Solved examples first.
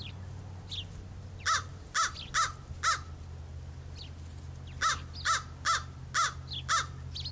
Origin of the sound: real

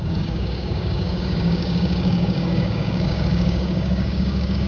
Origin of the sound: fake